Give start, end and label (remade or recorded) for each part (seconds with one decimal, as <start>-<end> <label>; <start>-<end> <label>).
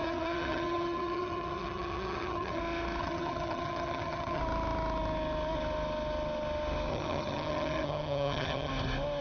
0.0-2.6 remade; 2.6-3.0 recorded; 3.0-4.4 remade; 4.4-6.9 recorded; 6.9-8.7 remade; 8.7-9.2 recorded